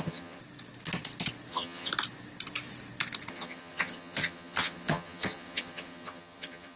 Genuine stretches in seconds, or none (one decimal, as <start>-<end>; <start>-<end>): 0.4-1.5; 1.9-3.3